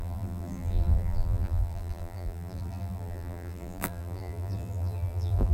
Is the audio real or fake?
fake